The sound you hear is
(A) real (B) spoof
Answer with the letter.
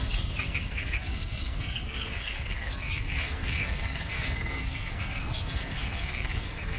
B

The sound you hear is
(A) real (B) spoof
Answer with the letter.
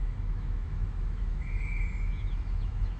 B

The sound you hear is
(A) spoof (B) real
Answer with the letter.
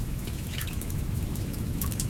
A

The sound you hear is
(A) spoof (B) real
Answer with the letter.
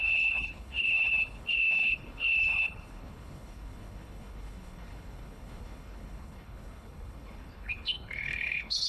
A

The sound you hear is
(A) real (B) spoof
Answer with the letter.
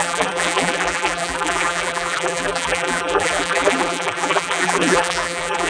B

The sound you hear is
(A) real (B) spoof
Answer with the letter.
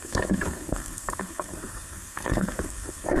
B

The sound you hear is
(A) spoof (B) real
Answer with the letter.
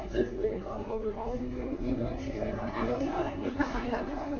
A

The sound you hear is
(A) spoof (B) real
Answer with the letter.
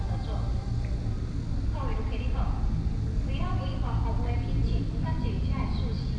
B